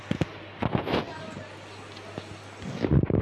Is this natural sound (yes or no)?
yes